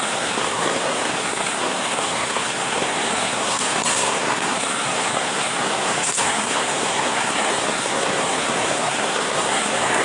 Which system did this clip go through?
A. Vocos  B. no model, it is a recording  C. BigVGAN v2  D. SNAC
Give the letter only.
D